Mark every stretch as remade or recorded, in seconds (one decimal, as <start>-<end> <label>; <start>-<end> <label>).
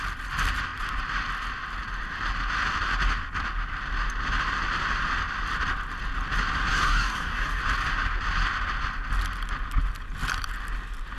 0.0-6.7 recorded; 6.7-7.6 remade; 7.6-11.2 recorded